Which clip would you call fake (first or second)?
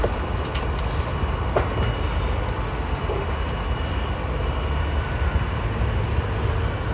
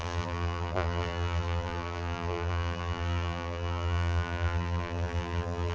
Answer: second